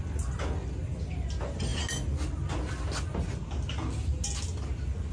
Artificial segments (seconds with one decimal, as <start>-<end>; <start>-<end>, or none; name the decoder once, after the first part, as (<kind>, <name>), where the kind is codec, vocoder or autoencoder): none